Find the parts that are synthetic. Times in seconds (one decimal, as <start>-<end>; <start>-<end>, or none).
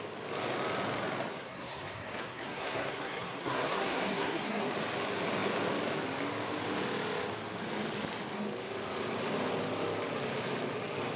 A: 1.3-4.7